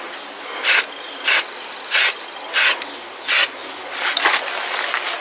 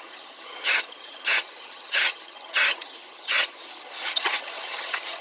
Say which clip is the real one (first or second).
first